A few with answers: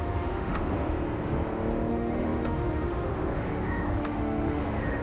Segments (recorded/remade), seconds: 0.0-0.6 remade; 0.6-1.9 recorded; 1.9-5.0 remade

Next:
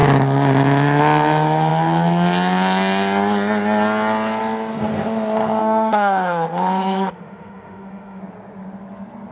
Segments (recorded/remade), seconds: 0.0-5.6 recorded; 5.6-8.2 remade; 8.2-9.3 recorded

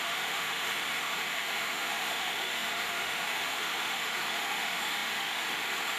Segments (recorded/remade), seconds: 0.0-6.0 remade

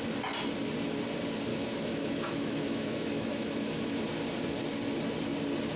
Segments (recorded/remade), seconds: 0.0-1.5 recorded; 1.5-4.0 remade; 4.0-5.8 recorded